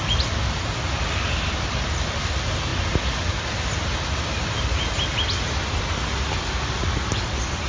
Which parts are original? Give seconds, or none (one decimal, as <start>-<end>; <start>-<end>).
0.0-7.7